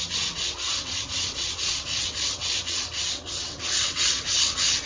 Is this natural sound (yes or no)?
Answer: no